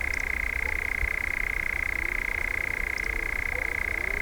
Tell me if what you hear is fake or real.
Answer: real